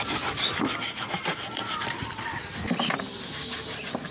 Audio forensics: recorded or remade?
recorded